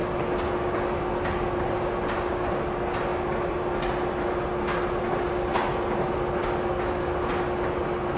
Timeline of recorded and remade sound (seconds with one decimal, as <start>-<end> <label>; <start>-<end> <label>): 0.0-8.2 recorded